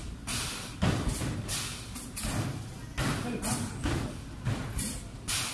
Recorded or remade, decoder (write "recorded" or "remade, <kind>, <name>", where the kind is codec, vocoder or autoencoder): recorded